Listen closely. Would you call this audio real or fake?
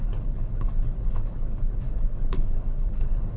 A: fake